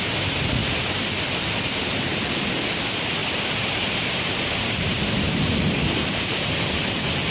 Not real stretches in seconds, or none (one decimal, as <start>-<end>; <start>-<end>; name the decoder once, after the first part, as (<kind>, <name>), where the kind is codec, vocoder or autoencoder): 0.6-1.3 (vocoder, BigVGAN v2); 3.2-6.5